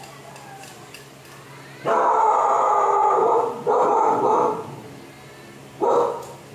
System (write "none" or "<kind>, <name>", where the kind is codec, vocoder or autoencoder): none